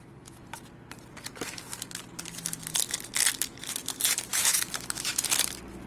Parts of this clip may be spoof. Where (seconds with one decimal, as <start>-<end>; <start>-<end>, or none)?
4.3-5.2